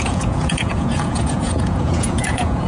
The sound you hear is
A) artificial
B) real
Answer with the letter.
A